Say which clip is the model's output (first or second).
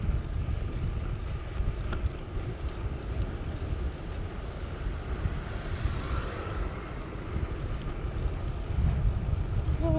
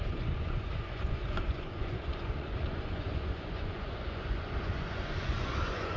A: second